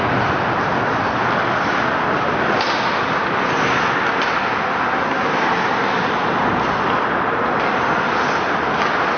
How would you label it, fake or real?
real